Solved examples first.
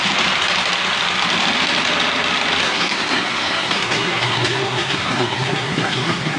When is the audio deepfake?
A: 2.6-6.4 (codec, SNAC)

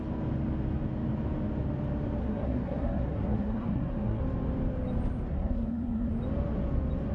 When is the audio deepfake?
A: 2.2-4.2 (codec, SNAC); 5.3-6.1

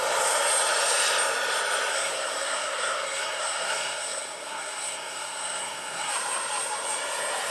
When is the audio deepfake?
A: 1.9-6.1 (codec, SNAC)

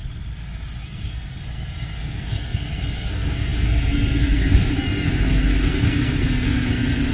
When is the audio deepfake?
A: 0.8-7.1 (codec, SNAC)

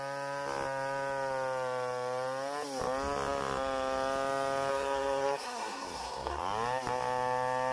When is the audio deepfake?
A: 4.7-6.4 (codec, SNAC)

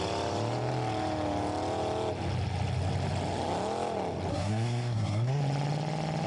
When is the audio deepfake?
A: 4.3-5.4 (codec, SNAC)

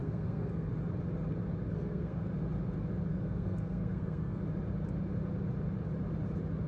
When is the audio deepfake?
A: 0.0-0.7 (codec, SNAC); 1.7-2.3; 3.1-4.4

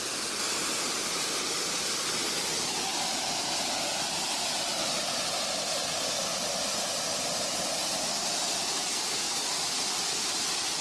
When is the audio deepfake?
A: 8.9-9.6 (codec, SNAC)